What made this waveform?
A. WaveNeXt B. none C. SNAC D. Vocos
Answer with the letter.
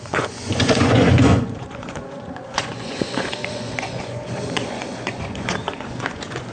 D